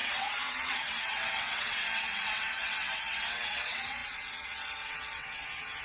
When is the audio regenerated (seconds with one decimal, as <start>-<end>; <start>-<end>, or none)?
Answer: 0.0-5.8